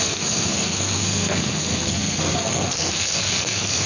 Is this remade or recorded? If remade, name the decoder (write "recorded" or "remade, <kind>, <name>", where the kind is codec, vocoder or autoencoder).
remade, codec, SNAC